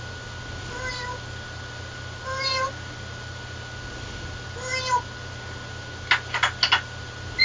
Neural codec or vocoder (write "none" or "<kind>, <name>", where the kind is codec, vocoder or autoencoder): none